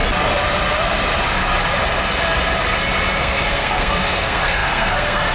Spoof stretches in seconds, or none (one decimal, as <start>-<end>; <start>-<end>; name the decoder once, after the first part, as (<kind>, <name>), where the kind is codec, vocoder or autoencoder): 3.2-5.3 (codec, SNAC)

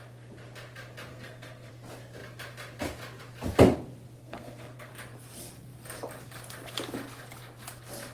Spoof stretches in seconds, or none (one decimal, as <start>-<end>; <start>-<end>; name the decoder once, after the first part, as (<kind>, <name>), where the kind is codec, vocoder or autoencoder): 1.1-1.7 (codec, SNAC); 4.2-4.9

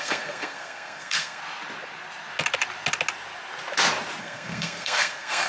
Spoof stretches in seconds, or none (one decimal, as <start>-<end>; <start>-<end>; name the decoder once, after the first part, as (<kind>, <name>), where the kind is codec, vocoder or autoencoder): 0.0-1.4 (codec, SNAC); 4.2-5.5

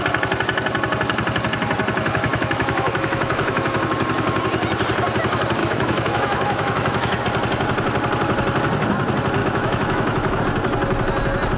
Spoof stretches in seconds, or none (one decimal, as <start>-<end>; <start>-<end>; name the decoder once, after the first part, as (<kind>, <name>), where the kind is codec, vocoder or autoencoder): 2.3-3.8 (autoencoder, DAC-VAE); 5.6-7.2; 9.4-10.4